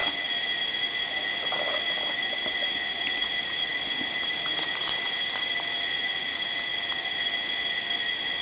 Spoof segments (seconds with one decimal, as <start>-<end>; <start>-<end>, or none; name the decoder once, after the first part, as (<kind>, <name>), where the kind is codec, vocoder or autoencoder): none